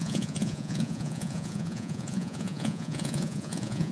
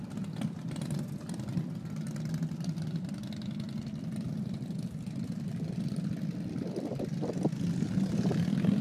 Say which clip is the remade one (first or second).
first